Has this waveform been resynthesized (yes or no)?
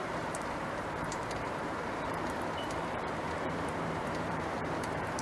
yes